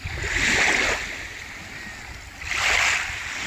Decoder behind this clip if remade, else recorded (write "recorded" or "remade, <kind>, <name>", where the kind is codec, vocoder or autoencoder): recorded